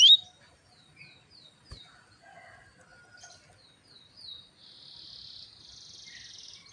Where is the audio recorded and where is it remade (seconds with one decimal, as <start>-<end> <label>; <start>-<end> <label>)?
0.0-6.7 recorded